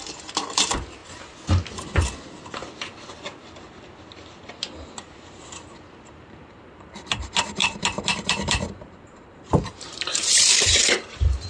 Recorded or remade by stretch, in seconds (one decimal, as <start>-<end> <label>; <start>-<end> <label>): 0.0-1.0 remade; 1.0-6.1 recorded; 6.1-11.5 remade